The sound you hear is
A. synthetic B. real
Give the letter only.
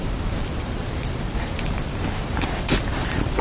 A